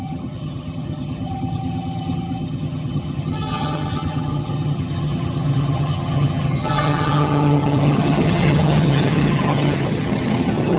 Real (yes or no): no